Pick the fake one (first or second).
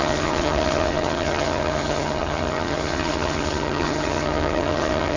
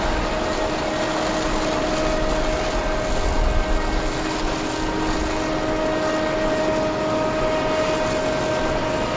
first